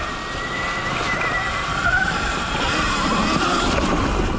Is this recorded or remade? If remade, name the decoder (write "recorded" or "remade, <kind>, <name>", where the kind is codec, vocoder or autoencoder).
recorded